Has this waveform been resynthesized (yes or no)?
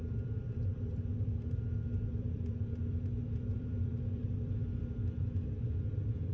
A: yes